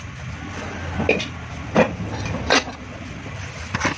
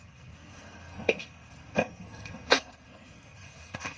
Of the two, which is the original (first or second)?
first